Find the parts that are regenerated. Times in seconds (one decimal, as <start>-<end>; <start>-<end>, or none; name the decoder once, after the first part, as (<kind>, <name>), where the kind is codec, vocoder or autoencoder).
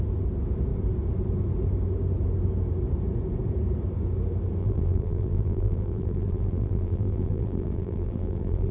4.6-8.7 (vocoder, BigVGAN v2)